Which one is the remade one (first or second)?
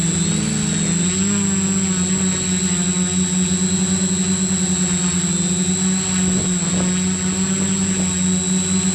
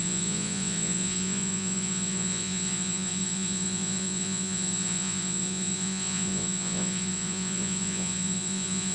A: second